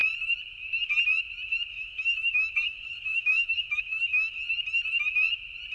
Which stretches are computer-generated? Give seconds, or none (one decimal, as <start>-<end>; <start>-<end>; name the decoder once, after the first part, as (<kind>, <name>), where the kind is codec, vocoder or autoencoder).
1.7-4.3 (autoencoder, DAC-VAE)